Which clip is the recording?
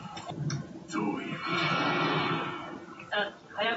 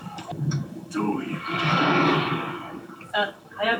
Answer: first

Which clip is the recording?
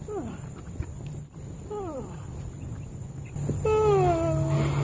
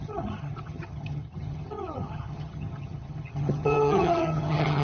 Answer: first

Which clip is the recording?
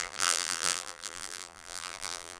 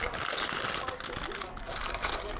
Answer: second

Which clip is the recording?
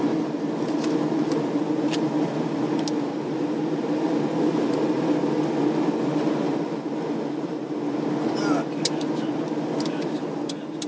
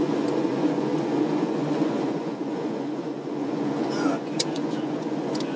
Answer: first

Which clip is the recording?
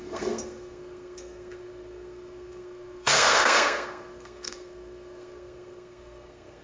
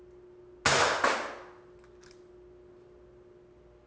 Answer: second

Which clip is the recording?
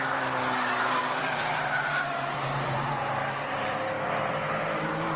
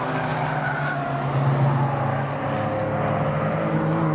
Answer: second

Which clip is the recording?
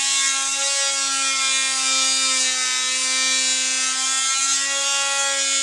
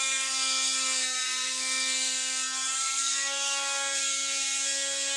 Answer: first